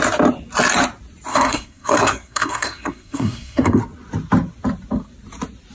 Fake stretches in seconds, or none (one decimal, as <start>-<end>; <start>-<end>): 1.3-3.8